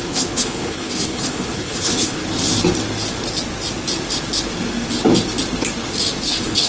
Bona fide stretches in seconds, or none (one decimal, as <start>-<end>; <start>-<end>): 2.2-6.2

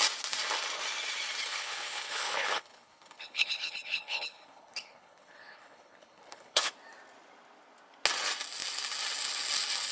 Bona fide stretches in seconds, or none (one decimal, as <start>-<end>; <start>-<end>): 0.0-1.5; 6.7-9.9

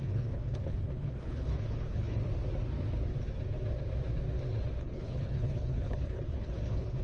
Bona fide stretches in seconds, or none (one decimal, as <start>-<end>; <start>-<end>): 2.2-4.8